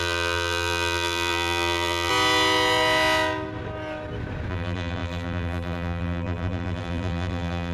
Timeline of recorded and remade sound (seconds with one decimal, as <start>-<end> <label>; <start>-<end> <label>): 0.0-2.1 remade; 2.1-4.5 recorded; 4.5-7.7 remade